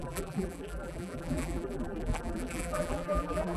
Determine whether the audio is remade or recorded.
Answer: remade